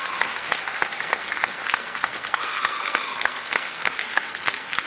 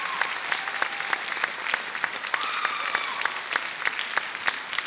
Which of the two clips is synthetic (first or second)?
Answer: first